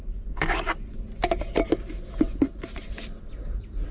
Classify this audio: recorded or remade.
recorded